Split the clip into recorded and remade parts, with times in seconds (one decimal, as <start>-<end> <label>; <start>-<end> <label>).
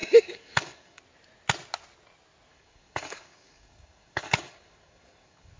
0.0-1.0 remade; 1.0-2.5 recorded; 2.5-5.6 remade